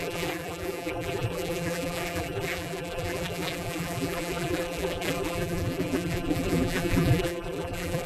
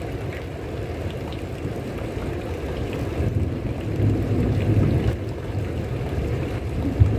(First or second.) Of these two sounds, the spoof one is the first